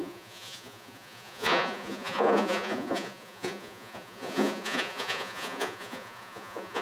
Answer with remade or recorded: remade